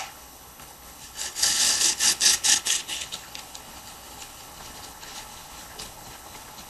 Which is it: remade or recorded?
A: remade